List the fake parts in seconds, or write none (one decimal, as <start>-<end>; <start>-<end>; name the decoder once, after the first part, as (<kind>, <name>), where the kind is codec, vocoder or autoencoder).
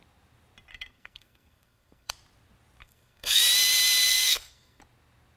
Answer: 0.7-2.1 (codec, SNAC); 2.8-3.4; 4.1-4.8